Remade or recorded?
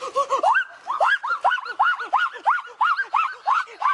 recorded